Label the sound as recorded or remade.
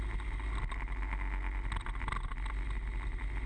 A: recorded